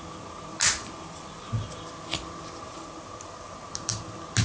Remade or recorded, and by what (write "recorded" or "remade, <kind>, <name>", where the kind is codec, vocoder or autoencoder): recorded